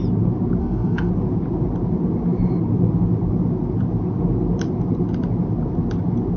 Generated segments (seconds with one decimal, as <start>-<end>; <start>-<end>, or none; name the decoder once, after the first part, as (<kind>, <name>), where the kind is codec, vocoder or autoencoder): 0.6-1.1 (autoencoder, DAC-VAE)